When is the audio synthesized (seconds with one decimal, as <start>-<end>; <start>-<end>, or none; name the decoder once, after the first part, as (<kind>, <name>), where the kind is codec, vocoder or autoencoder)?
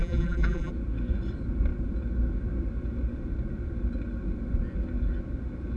0.0-0.7 (vocoder, BigVGAN v2)